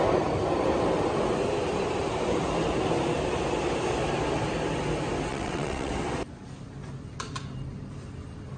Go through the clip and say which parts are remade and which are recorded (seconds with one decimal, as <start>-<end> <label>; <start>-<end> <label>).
0.0-5.3 recorded; 5.3-5.9 remade; 5.9-8.6 recorded